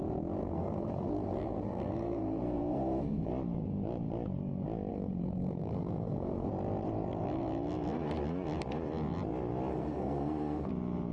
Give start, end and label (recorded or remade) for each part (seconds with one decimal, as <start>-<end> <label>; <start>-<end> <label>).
0.0-0.4 recorded; 0.4-3.3 remade; 3.3-4.9 recorded; 4.9-6.5 remade; 6.5-9.7 recorded; 9.7-10.7 remade; 10.7-11.1 recorded